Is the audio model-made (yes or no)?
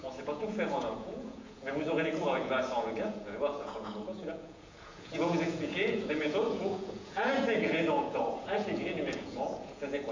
yes